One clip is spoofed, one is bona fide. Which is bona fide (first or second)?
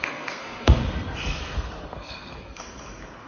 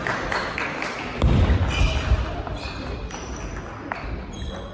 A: second